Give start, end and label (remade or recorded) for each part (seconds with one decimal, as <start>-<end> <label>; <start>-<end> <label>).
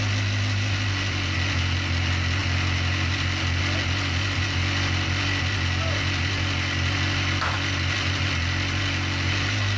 0.0-9.8 recorded